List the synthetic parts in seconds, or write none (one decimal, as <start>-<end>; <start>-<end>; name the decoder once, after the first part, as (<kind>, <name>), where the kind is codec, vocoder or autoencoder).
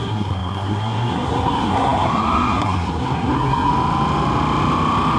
0.0-3.7 (codec, SNAC)